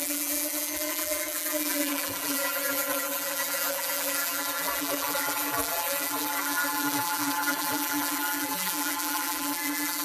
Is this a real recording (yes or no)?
no